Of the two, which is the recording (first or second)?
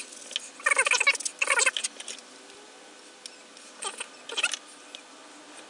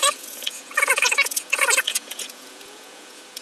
first